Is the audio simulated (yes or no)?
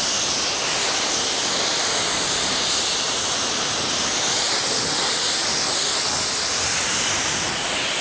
no